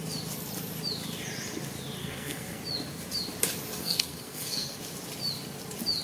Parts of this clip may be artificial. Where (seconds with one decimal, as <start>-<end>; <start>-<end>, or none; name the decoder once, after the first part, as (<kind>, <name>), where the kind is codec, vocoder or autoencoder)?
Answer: 2.0-2.6 (codec, SNAC); 3.8-4.8